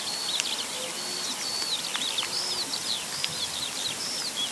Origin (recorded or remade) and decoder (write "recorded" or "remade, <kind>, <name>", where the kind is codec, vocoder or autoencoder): recorded